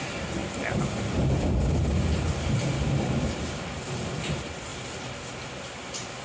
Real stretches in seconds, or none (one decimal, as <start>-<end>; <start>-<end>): 0.0-6.2